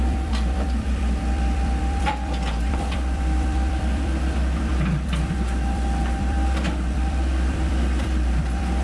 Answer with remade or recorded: remade